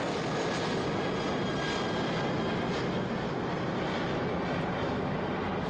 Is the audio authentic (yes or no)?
yes